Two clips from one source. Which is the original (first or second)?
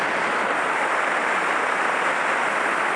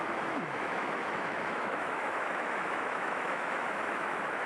first